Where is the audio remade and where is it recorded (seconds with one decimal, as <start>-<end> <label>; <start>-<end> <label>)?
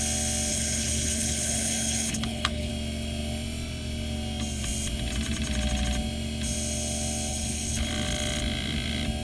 0.0-0.5 recorded; 0.5-2.7 remade; 2.7-7.3 recorded; 7.3-7.9 remade; 7.9-9.2 recorded